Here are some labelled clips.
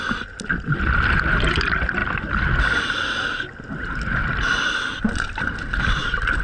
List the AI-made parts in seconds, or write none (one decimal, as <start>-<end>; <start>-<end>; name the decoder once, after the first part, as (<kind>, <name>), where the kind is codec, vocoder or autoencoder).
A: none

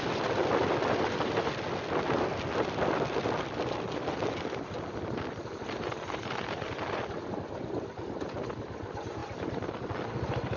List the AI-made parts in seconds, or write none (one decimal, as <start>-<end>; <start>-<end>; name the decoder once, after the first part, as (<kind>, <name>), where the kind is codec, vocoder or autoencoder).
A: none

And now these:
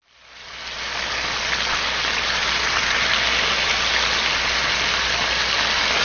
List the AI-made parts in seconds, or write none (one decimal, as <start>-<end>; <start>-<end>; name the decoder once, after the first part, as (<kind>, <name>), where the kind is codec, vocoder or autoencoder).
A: none